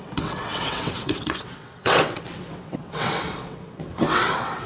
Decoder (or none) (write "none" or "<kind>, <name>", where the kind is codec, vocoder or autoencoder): vocoder, WaveNeXt